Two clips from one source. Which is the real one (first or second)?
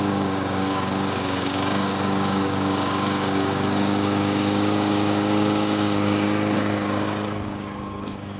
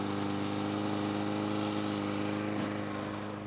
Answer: second